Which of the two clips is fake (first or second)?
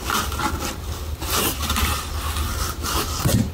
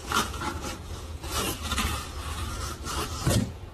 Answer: second